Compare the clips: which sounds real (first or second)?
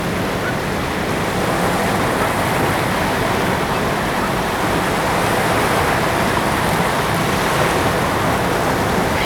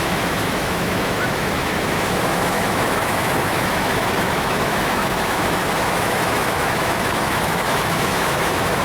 first